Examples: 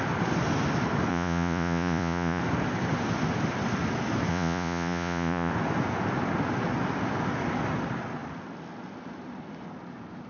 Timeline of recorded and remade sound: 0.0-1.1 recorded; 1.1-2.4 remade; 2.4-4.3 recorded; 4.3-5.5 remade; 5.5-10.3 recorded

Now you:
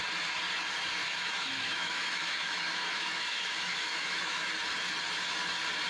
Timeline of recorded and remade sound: 0.0-1.0 recorded; 1.0-4.5 remade; 4.5-5.9 recorded

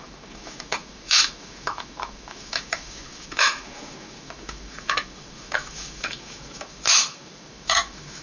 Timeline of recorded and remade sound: 0.0-8.2 remade

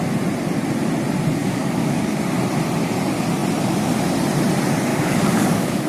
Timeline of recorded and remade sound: 0.0-1.4 recorded; 1.4-2.2 remade; 2.2-4.9 recorded; 4.9-5.9 remade

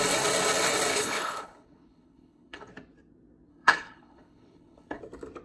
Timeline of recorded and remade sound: 0.0-0.9 recorded; 0.9-2.7 remade; 2.7-3.5 recorded; 3.5-5.0 remade; 5.0-5.4 recorded